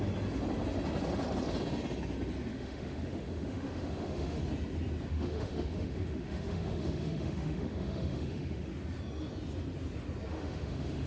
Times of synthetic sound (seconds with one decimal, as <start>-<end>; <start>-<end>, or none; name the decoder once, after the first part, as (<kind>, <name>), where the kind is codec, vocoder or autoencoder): 2.5-4.4 (autoencoder, DAC-VAE); 5.1-8.7; 10.3-11.1